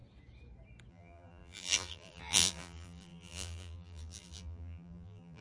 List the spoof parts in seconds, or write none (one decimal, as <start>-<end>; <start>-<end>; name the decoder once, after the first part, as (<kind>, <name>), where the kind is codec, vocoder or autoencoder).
0.9-5.4 (vocoder, BigVGAN v2)